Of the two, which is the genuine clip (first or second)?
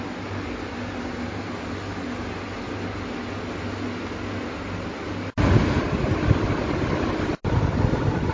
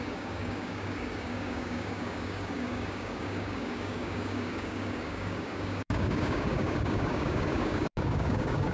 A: first